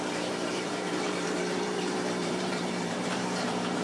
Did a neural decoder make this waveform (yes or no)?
yes